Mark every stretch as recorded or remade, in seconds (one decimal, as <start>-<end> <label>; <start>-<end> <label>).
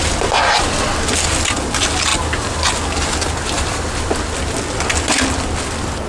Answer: 0.0-6.1 recorded